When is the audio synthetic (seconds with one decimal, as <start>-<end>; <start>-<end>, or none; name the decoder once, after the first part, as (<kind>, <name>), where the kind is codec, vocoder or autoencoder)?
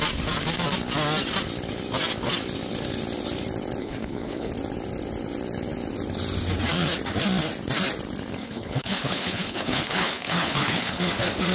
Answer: 3.8-4.5 (codec, HILCodec); 8.4-11.0